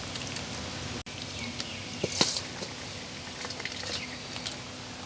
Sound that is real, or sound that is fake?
real